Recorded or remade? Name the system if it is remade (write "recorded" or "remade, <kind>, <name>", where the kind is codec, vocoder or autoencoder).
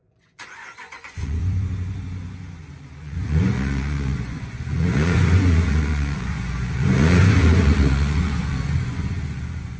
remade, vocoder, Vocos